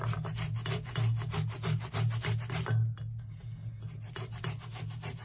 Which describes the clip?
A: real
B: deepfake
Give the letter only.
A